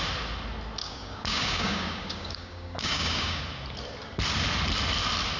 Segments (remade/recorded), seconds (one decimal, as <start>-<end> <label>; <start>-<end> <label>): 0.0-0.8 recorded; 0.8-3.4 remade; 3.4-5.4 recorded